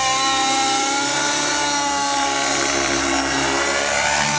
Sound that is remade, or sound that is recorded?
recorded